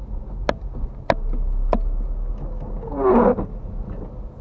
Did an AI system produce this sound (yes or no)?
no